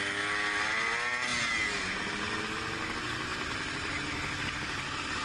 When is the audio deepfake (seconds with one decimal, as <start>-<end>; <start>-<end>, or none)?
3.3-4.0